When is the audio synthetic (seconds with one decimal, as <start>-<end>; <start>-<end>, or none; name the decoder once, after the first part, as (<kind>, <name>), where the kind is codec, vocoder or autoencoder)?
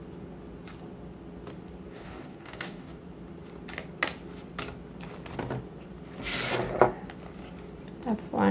1.9-3.0 (codec, DAC)